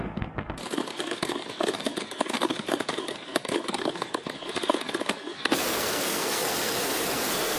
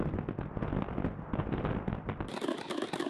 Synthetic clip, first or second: first